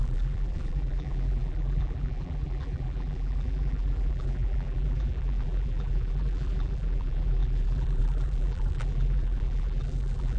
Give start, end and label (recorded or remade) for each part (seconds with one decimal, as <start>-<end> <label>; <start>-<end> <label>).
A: 0.0-10.4 remade